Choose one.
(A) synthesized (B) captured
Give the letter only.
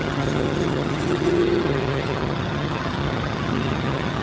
A